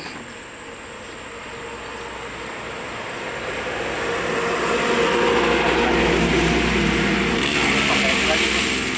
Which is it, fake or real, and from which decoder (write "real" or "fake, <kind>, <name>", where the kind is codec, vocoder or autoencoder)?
real